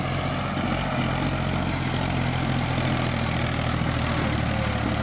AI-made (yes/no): no